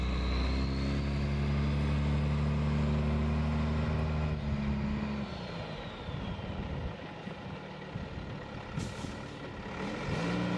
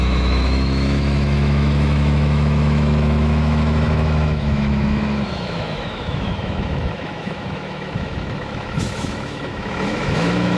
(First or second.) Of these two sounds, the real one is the first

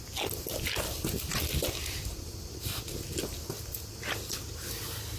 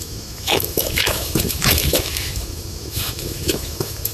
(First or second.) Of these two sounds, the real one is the first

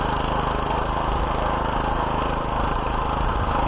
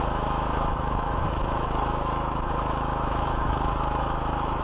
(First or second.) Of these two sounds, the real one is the first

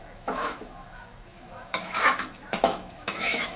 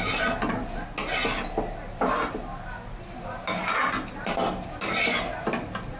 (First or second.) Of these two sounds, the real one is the second